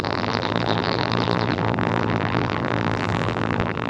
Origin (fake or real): fake